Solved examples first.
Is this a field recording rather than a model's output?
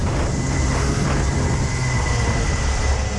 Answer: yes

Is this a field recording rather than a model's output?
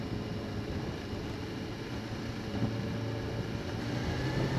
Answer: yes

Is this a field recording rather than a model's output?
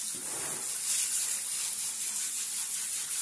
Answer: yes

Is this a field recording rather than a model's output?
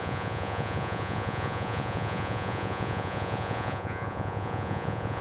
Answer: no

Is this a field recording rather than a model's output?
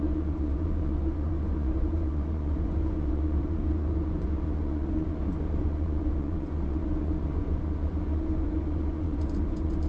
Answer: no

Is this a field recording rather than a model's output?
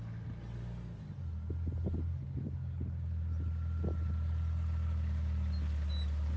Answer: yes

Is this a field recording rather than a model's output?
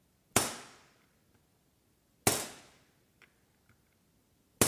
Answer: yes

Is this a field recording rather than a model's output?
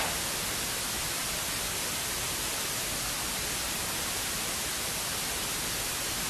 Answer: yes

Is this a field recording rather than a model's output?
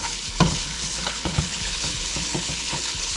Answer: no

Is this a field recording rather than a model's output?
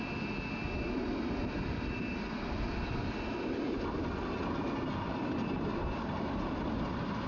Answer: yes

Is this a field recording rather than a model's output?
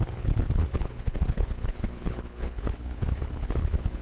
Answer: no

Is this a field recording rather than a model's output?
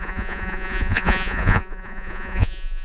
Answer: no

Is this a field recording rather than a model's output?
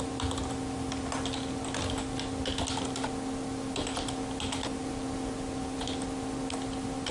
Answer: yes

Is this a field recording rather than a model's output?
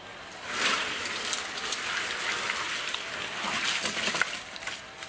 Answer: yes